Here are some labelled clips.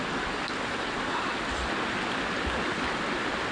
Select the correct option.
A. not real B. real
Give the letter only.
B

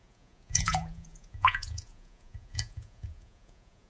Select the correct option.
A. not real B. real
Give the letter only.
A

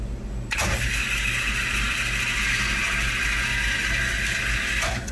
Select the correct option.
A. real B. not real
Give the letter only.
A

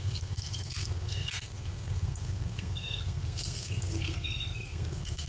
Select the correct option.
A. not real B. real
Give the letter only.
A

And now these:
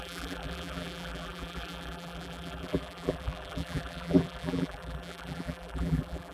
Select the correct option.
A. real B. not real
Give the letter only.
B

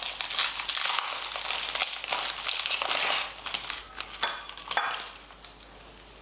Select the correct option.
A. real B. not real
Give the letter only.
A